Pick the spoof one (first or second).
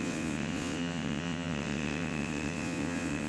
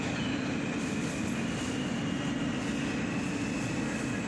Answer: first